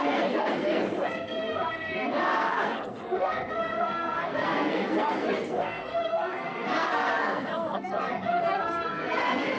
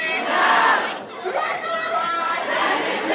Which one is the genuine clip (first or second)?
second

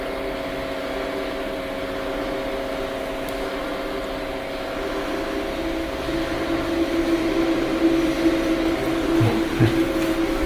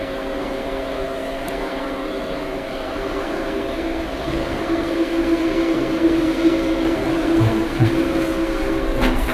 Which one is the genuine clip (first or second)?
first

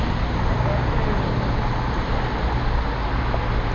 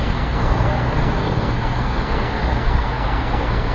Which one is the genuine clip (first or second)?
first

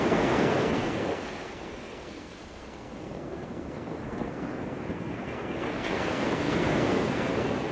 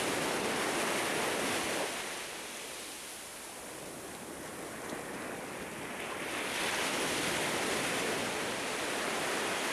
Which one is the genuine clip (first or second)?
second